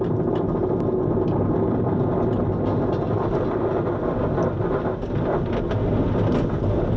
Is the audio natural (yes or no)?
yes